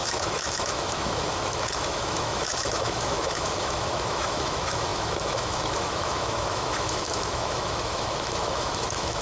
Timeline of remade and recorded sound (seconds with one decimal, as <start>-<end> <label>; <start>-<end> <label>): 0.0-9.2 remade